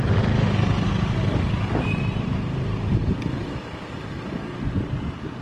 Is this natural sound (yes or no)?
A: yes